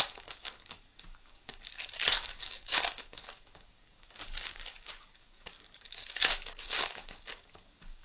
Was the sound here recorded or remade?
remade